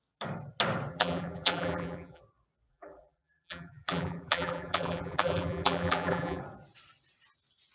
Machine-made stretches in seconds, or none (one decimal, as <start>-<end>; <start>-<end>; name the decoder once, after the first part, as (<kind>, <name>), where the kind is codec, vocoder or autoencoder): 0.9-2.2 (vocoder, BigVGAN v2); 2.7-6.4

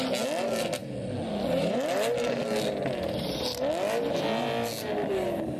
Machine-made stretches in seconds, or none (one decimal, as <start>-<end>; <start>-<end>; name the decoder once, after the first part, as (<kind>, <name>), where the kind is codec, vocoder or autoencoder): none

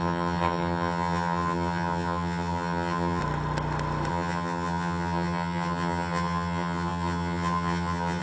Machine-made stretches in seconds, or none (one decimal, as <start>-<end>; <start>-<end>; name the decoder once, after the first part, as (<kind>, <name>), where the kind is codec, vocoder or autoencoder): 0.0-3.2 (vocoder, HiFi-GAN); 4.1-8.2

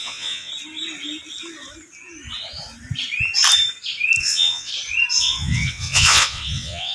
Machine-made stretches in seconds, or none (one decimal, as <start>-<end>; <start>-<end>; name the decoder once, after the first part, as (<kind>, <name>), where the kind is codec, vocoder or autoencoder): 0.0-0.5 (vocoder, WaveNeXt); 4.2-4.7; 5.2-6.9

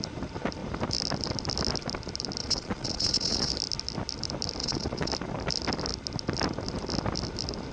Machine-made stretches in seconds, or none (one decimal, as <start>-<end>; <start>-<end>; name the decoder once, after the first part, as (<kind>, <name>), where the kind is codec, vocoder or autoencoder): 2.4-3.5 (vocoder, Vocos); 4.6-5.1

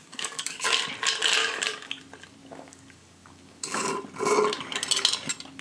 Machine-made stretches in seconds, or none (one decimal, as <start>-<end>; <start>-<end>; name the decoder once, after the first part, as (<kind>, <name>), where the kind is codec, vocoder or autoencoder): 0.0-0.8 (codec, DAC); 1.4-2.0; 2.4-3.9

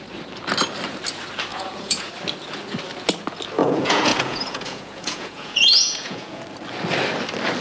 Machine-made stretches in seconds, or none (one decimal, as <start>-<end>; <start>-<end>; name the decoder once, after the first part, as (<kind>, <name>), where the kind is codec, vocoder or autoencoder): 1.5-2.1 (vocoder, Vocos); 3.6-6.4

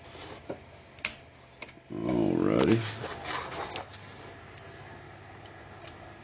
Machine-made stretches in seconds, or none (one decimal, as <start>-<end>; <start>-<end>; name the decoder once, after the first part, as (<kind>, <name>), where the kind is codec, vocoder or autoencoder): none